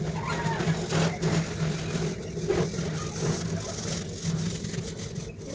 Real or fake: real